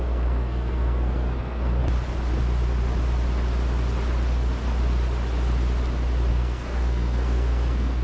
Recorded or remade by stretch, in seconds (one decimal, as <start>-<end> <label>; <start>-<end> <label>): 0.0-1.8 remade; 1.8-6.3 recorded; 6.3-8.0 remade